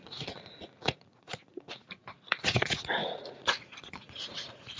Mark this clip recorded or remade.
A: remade